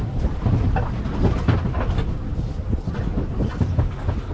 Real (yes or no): yes